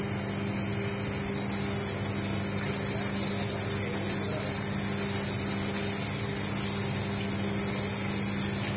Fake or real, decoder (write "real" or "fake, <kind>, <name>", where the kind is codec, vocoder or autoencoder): real